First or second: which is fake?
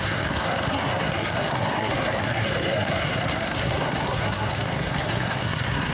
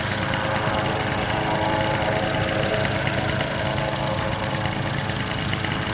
first